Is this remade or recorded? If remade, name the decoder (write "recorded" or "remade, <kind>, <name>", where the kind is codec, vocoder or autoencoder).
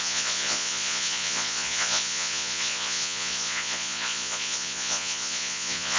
remade, vocoder, Vocos